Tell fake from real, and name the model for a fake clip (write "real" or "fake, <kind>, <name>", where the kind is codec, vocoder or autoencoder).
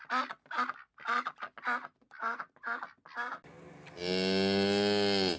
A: real